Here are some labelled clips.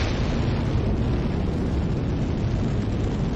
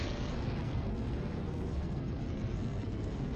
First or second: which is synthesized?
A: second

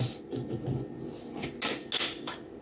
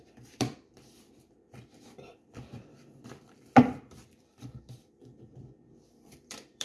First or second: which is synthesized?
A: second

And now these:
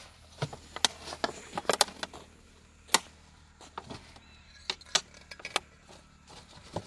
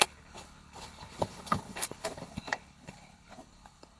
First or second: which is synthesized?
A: second